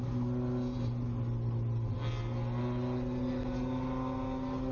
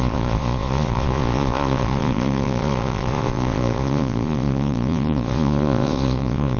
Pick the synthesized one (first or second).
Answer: second